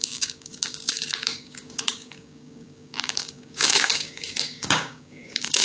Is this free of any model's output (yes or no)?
no